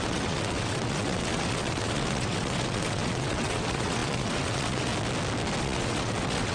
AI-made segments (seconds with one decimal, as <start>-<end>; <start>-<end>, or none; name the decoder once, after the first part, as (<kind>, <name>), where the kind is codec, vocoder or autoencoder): 0.0-4.9 (vocoder, WaveNeXt); 5.6-6.5